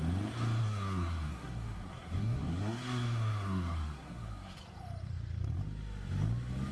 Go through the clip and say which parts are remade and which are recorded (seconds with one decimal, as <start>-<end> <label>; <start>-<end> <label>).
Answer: 0.0-0.6 recorded; 0.6-4.6 remade; 4.6-6.7 recorded